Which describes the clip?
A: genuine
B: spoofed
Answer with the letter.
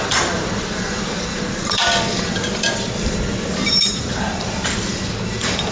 B